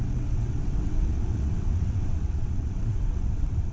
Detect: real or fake fake